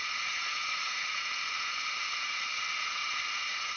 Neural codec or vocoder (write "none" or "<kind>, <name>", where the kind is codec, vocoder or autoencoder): vocoder, Vocos